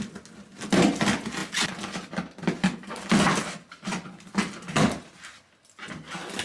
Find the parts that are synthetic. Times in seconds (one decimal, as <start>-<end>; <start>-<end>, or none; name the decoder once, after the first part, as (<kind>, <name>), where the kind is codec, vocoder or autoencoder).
none